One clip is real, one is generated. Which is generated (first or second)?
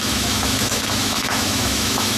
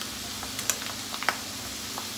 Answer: first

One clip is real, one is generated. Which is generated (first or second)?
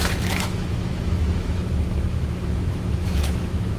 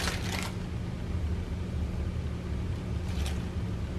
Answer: first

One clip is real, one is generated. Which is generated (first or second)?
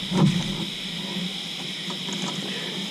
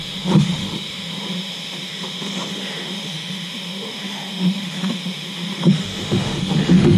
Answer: second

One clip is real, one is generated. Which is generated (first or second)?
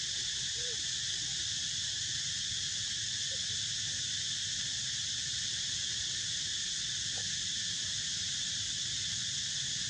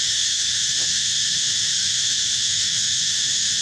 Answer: second